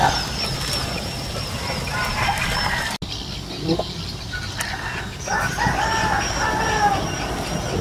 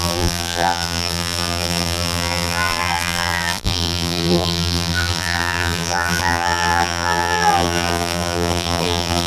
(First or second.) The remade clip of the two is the second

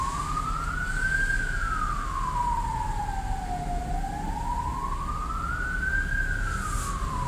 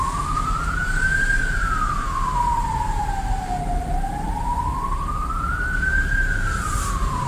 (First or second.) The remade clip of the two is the second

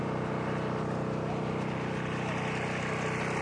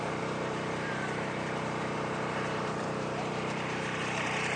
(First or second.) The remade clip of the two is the second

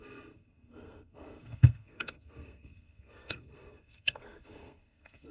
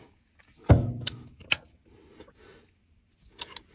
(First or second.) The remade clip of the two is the first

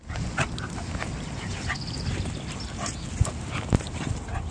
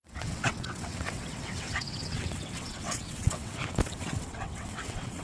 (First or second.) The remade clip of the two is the second